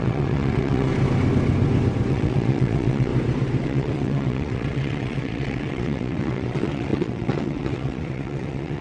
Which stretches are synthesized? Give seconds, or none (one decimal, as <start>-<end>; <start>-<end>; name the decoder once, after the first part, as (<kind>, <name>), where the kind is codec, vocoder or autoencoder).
0.0-0.9 (vocoder, WaveNeXt); 2.1-3.1; 3.6-8.8